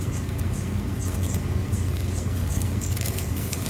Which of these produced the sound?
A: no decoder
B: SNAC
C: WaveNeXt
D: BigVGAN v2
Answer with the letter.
B